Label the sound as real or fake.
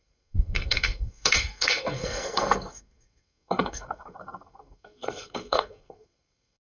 fake